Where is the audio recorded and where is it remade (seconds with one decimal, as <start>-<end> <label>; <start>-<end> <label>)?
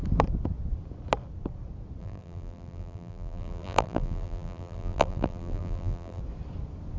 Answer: 0.0-2.0 recorded; 2.0-6.2 remade; 6.2-7.0 recorded